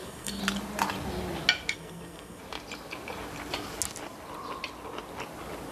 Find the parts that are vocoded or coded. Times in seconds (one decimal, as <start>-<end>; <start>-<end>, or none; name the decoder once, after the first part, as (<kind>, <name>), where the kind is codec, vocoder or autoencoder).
0.0-0.4 (codec, SNAC); 1.7-2.4